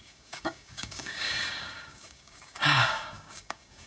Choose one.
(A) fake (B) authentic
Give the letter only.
A